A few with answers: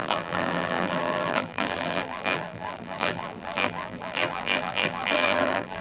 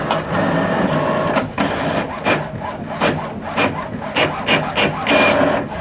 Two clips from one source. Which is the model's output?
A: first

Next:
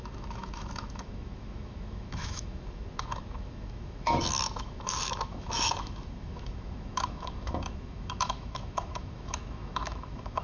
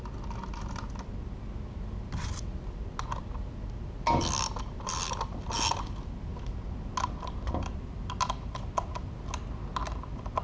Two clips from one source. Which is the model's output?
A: first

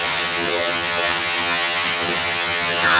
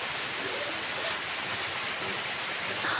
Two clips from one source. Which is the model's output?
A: first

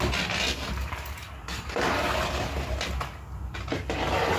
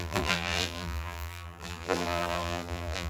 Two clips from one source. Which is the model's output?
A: second